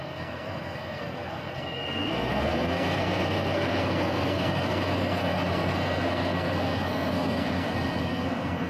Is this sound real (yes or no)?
no